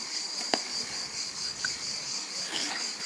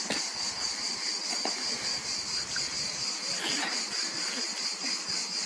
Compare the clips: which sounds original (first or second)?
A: second